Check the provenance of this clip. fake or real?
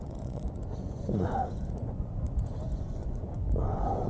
fake